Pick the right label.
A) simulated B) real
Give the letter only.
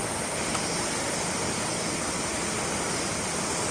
B